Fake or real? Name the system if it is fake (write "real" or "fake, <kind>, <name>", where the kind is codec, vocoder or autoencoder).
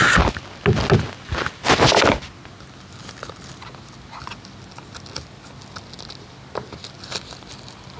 real